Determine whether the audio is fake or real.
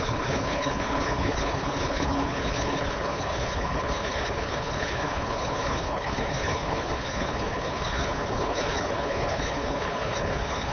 fake